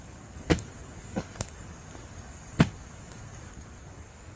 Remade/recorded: remade